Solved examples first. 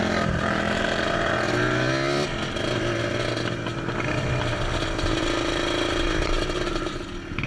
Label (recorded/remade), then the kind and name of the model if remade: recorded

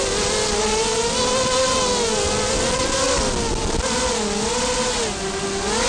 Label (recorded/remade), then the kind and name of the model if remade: recorded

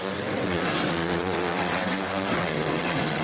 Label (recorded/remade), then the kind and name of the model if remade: remade, vocoder, WaveNeXt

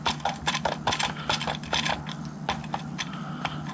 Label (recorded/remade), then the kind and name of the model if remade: recorded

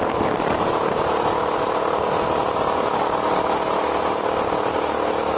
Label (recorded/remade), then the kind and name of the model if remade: recorded